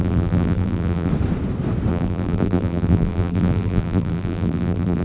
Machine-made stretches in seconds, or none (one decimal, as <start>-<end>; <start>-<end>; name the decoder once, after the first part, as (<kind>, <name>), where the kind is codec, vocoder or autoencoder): 0.0-1.1 (vocoder, BigVGAN v2); 1.9-5.0

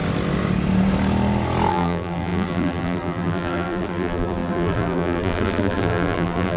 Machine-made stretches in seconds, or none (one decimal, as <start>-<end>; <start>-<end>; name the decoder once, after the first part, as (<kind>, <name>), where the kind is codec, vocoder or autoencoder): 1.7-6.6 (vocoder, BigVGAN v2)